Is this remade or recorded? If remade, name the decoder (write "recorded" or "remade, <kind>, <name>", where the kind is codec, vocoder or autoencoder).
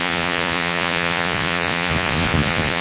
remade, vocoder, Vocos